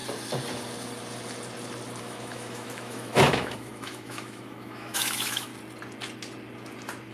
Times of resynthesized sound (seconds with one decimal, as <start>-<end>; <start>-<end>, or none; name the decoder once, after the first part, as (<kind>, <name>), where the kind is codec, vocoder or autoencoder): 2.0-5.5 (autoencoder, DAC-VAE)